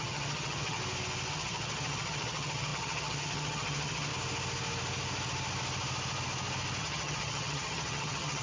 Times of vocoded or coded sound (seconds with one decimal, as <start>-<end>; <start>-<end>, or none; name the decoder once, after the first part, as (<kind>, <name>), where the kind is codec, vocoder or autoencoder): 0.0-0.8 (vocoder, HiFi-GAN); 1.3-4.1; 6.8-8.4